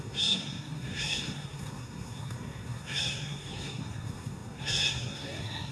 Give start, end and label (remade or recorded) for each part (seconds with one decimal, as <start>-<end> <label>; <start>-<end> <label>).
0.0-5.7 remade